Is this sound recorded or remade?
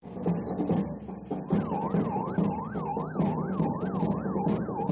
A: recorded